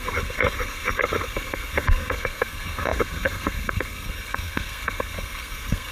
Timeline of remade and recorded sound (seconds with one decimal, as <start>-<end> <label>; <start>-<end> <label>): 0.0-5.9 remade